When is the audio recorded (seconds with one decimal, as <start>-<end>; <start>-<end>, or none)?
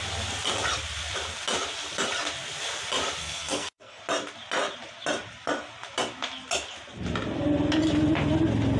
0.0-3.2; 4.0-8.8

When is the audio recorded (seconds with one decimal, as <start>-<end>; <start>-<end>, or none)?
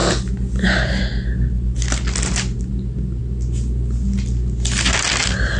0.0-5.6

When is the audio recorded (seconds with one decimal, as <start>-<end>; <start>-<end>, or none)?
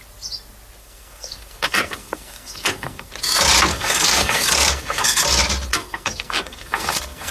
0.0-0.8; 3.1-3.7; 5.2-5.7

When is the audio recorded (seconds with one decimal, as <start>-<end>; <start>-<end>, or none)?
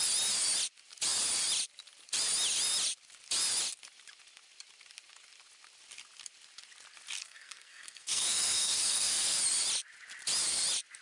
0.0-7.2; 9.4-11.0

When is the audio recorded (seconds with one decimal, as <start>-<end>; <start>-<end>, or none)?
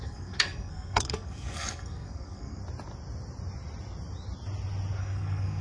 2.6-5.0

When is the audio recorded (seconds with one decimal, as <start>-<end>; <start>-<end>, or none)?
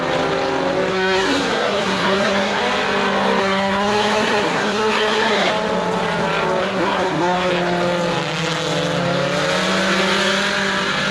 0.0-0.9; 2.6-3.4; 5.5-6.6; 7.5-11.1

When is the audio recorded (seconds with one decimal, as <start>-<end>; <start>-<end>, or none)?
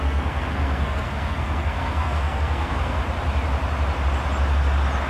3.0-5.1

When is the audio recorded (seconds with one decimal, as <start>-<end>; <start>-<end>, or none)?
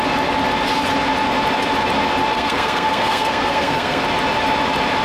0.0-2.3; 4.0-5.0